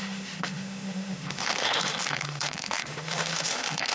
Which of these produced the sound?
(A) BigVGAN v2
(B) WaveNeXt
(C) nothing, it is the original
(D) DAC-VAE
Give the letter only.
D